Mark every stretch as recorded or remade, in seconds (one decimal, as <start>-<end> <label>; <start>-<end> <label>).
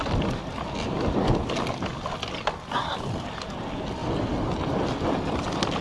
0.0-5.8 recorded